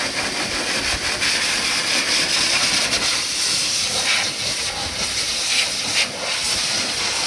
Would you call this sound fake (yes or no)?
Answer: no